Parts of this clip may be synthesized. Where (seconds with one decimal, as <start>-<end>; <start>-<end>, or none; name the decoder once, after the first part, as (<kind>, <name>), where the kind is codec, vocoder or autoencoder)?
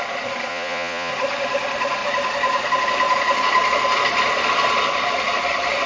0.5-1.1 (vocoder, Vocos)